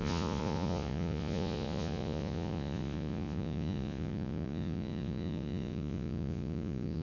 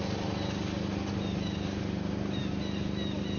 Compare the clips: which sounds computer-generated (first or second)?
first